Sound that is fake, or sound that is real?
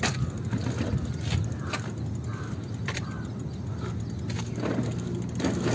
real